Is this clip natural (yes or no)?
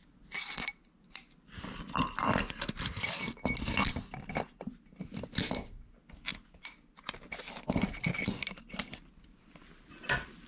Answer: yes